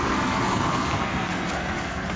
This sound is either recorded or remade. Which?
remade